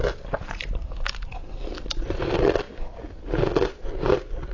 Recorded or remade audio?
recorded